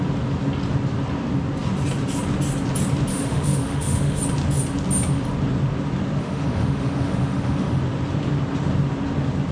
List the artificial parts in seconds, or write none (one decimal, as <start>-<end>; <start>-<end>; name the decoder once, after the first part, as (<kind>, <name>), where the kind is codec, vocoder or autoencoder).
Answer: 3.1-4.2 (autoencoder, DAC-VAE); 6.2-7.8